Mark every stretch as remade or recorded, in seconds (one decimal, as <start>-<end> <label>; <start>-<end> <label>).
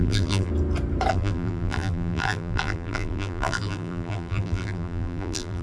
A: 0.0-0.5 remade; 0.5-1.1 recorded; 1.1-5.6 remade